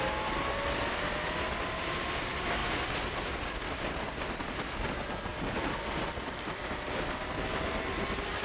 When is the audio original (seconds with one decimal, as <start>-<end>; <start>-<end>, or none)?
0.0-8.4